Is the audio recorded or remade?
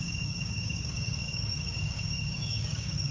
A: remade